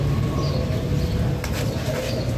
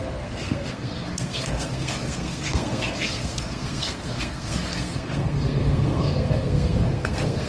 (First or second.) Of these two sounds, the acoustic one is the first